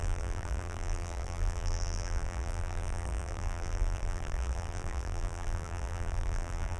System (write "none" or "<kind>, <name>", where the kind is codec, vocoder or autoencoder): vocoder, BigVGAN v2